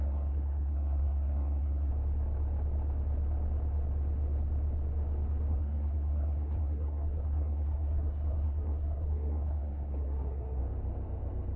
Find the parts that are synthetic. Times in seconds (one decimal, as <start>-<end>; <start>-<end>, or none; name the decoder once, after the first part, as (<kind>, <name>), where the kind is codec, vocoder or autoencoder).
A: 0.0-1.9 (codec, SNAC); 5.5-10.6